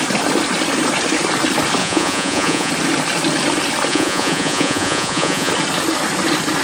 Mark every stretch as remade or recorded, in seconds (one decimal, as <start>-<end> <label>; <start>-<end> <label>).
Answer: 0.0-1.8 recorded; 1.8-2.7 remade; 2.7-3.9 recorded; 3.9-5.5 remade; 5.5-6.6 recorded

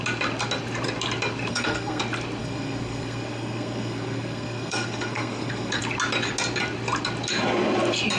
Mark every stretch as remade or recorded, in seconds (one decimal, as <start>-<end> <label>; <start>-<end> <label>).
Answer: 0.0-1.5 recorded; 1.5-2.0 remade; 2.0-2.4 recorded; 2.4-5.8 remade; 5.8-8.2 recorded

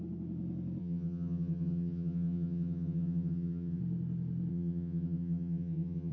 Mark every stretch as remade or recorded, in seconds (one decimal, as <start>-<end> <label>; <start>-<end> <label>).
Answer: 0.0-0.8 recorded; 0.8-3.8 remade; 3.8-4.5 recorded; 4.5-6.1 remade